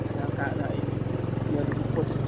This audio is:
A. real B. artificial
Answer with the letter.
A